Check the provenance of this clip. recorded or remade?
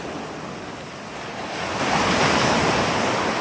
recorded